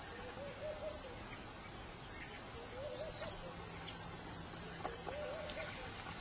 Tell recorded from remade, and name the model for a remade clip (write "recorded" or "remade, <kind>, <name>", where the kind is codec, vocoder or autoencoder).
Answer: recorded